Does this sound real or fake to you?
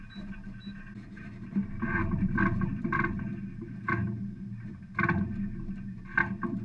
real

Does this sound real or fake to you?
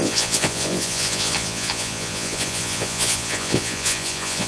fake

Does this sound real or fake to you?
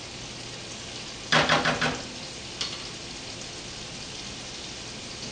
real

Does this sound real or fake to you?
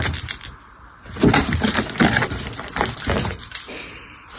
fake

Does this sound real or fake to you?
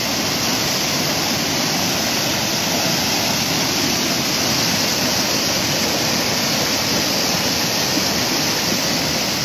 real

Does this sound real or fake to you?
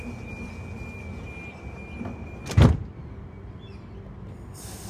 real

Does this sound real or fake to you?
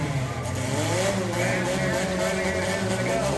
real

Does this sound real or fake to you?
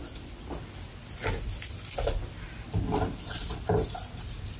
real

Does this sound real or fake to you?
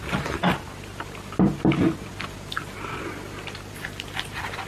real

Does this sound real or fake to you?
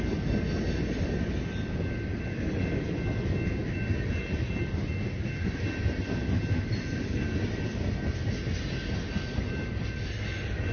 real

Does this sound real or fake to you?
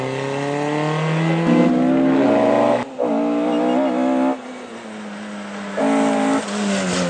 real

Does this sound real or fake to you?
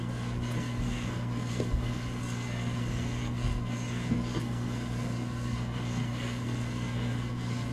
fake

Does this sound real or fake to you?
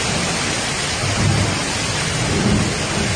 real